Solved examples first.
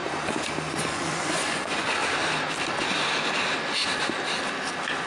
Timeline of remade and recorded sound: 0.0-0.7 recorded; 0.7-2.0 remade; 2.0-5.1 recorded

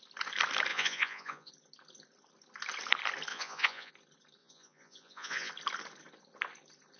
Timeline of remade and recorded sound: 0.0-0.7 recorded; 0.7-1.5 remade; 1.5-3.3 recorded; 3.3-3.9 remade; 3.9-4.4 recorded; 4.4-5.5 remade; 5.5-7.0 recorded

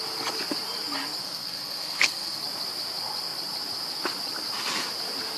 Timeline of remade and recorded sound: 0.0-1.2 recorded; 1.2-2.4 remade; 2.4-5.4 recorded